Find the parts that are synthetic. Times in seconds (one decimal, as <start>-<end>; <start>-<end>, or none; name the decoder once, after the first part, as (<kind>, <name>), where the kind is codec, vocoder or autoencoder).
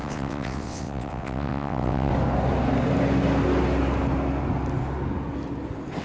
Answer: 0.0-2.1 (vocoder, WaveNeXt)